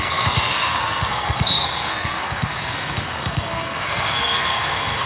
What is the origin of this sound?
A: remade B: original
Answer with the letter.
A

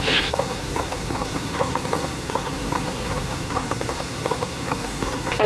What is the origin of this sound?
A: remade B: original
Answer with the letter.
A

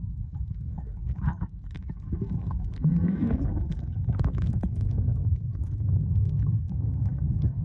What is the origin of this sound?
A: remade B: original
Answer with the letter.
A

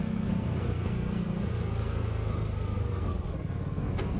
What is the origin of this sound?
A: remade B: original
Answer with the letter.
A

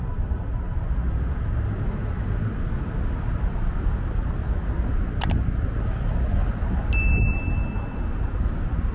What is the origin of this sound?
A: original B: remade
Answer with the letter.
A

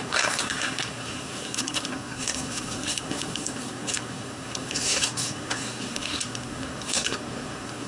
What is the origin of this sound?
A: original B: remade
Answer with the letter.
B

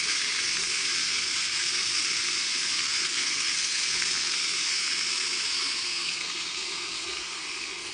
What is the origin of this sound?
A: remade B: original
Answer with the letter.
A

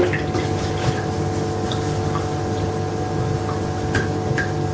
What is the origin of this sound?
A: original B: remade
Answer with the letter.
A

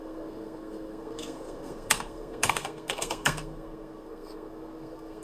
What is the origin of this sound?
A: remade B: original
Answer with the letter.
A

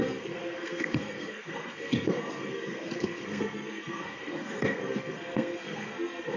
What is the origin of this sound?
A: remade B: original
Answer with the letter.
A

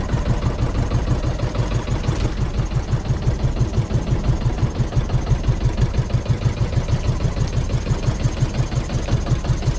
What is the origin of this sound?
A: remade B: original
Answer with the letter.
B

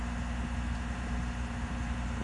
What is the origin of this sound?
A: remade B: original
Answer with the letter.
B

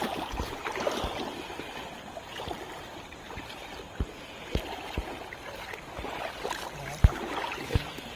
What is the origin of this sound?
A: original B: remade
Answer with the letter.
A